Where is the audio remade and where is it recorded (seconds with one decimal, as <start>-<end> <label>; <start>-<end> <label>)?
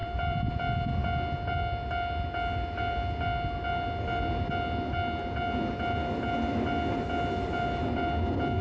0.0-0.5 remade; 0.5-8.6 recorded